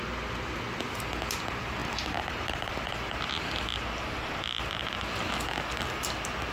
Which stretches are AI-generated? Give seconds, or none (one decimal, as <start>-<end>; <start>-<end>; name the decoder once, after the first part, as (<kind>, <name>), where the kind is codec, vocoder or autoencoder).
1.8-2.7 (vocoder, BigVGAN v2)